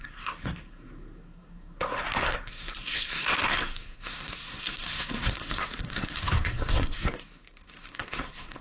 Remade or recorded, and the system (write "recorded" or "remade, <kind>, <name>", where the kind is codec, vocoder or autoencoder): remade, codec, SNAC